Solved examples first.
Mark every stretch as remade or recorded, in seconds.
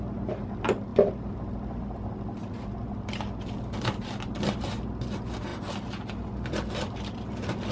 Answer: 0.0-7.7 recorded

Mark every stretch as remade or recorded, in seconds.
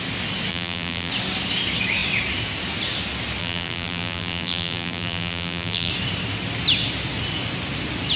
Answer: 0.0-0.5 recorded; 0.5-1.1 remade; 1.1-3.4 recorded; 3.4-5.9 remade; 5.9-8.2 recorded